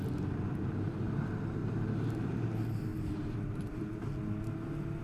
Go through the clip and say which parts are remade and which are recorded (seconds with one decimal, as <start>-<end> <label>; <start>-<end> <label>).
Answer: 0.0-1.6 recorded; 1.6-2.4 remade; 2.4-2.9 recorded; 2.9-4.0 remade; 4.0-5.0 recorded

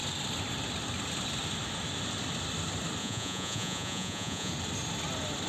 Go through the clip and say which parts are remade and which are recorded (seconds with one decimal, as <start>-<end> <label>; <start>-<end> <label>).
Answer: 0.0-3.0 recorded; 3.0-4.5 remade; 4.5-5.5 recorded

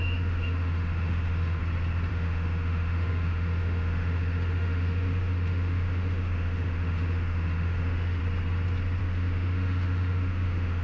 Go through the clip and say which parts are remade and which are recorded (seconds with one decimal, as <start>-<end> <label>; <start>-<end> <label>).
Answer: 0.0-1.6 remade; 1.6-2.1 recorded; 2.1-8.2 remade; 8.2-9.0 recorded; 9.0-10.8 remade

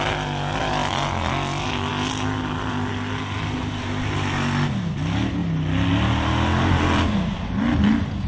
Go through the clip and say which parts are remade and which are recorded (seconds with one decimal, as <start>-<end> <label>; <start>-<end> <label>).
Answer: 0.0-8.3 recorded

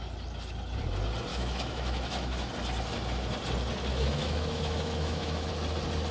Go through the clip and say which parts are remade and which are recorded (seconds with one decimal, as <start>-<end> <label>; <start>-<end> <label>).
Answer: 0.0-1.3 recorded; 1.3-2.5 remade; 2.5-3.9 recorded; 3.9-5.5 remade; 5.5-6.1 recorded